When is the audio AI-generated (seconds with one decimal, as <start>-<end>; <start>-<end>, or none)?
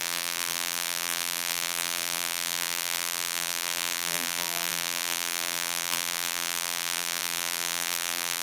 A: 0.0-8.4